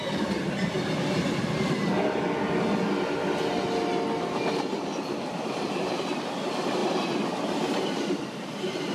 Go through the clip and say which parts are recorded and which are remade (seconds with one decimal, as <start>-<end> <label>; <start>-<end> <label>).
0.0-8.9 recorded